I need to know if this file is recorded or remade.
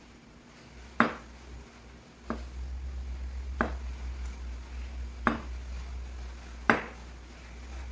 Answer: recorded